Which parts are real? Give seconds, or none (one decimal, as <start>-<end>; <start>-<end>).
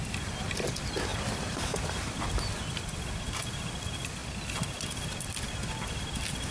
0.0-1.1; 2.9-6.5